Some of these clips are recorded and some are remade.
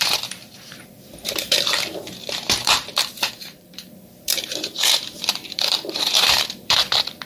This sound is remade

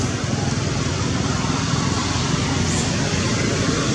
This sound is remade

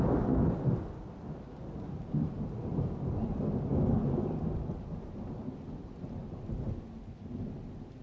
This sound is recorded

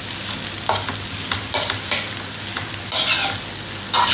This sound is recorded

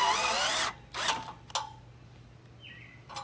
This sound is recorded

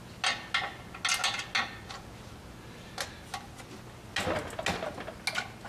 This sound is recorded